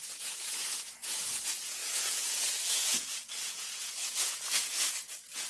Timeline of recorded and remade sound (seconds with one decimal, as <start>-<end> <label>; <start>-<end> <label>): 0.0-5.5 remade